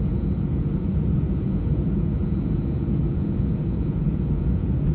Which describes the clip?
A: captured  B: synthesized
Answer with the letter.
B